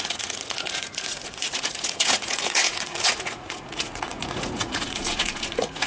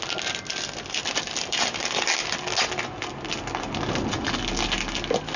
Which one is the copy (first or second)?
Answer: first